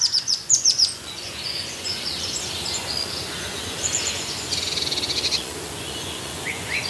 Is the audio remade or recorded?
remade